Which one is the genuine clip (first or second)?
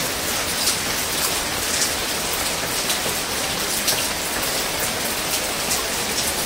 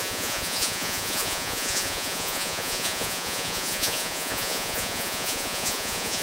first